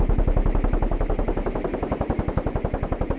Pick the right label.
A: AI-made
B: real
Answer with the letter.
B